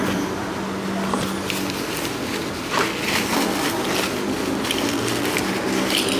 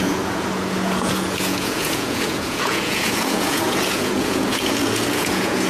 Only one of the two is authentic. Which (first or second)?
first